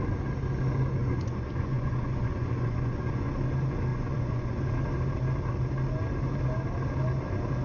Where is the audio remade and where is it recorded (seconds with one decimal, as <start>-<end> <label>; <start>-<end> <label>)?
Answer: 0.0-1.0 recorded; 1.0-3.3 remade; 3.3-3.9 recorded; 3.9-4.6 remade; 4.6-7.6 recorded